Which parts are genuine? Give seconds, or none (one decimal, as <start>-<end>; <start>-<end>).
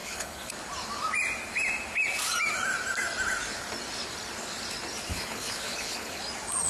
0.5-5.1; 6.2-6.7